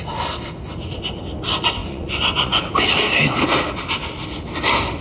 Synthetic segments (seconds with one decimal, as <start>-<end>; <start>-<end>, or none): 1.8-2.6